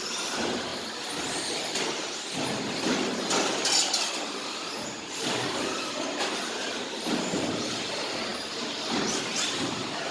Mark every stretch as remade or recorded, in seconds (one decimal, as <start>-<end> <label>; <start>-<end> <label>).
0.0-0.7 remade; 0.7-4.1 recorded; 4.1-10.1 remade